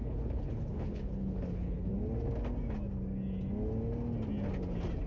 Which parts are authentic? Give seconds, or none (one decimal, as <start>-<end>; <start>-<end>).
1.9-5.1